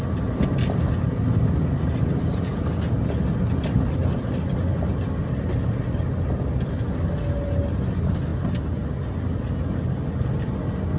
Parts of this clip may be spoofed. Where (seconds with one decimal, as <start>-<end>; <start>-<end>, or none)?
none